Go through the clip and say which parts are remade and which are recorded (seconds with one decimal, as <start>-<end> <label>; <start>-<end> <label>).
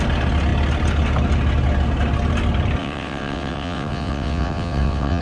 0.0-2.8 recorded; 2.8-5.2 remade